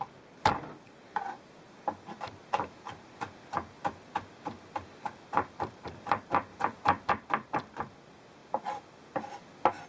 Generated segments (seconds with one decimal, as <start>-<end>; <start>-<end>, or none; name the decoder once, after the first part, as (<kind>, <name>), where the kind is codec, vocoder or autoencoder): none

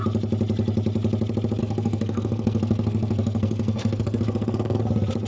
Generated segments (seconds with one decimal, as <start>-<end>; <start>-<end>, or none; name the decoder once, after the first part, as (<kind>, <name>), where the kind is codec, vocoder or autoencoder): 1.6-4.8 (codec, SNAC)